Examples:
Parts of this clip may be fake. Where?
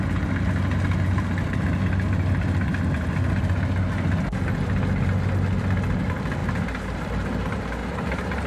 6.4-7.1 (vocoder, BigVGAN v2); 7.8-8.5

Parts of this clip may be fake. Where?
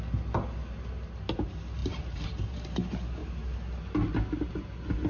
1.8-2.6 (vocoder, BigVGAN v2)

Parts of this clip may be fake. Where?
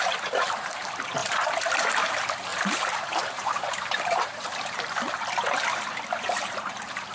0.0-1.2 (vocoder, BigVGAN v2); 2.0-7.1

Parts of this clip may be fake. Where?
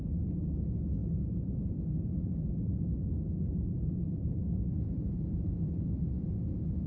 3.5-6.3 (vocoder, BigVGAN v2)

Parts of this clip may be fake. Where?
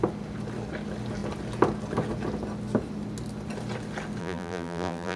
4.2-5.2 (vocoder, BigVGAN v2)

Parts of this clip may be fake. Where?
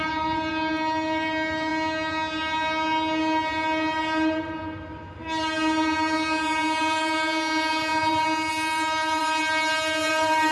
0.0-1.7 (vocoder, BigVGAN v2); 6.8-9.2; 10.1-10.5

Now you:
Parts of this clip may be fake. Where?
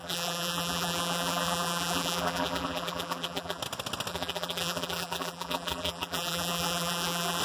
0.0-3.6 (vocoder, BigVGAN v2); 4.1-7.4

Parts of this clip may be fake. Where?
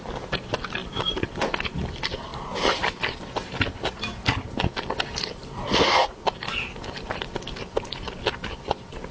none